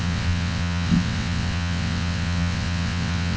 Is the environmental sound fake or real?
fake